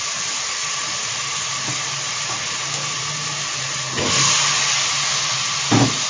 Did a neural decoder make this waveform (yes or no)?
no